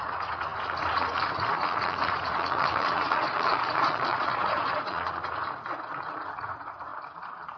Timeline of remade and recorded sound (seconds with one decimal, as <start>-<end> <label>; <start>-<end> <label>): 0.0-6.9 remade; 6.9-7.6 recorded